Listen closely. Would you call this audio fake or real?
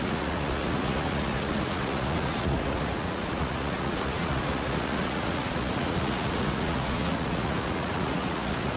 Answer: fake